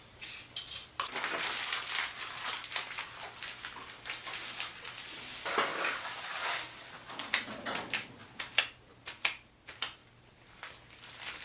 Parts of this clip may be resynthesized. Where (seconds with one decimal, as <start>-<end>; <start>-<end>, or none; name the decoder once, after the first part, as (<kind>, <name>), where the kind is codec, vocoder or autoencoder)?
5.7-7.3 (codec, DAC)